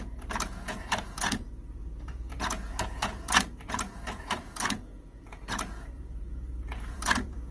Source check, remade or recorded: remade